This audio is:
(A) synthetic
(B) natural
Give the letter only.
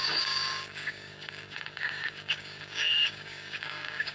A